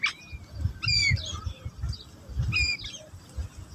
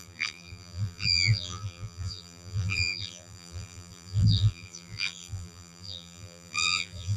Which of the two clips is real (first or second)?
first